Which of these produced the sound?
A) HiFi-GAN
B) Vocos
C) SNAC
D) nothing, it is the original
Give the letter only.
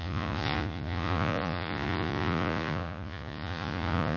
B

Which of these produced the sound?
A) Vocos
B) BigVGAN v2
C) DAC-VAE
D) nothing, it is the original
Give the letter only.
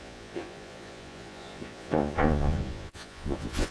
A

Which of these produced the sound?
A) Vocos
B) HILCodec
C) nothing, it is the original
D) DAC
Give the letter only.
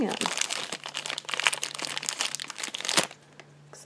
C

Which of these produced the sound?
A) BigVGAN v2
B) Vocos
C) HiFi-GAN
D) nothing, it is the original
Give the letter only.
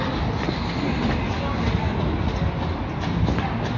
D